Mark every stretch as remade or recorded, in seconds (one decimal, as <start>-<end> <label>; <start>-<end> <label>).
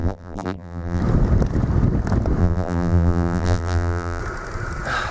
0.0-1.0 remade; 1.0-2.4 recorded; 2.4-4.2 remade; 4.2-5.1 recorded